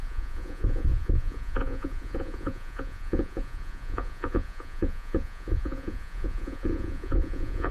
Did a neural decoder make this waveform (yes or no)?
yes